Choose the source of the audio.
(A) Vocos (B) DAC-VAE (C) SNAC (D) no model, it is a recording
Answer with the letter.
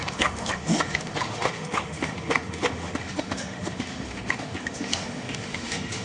B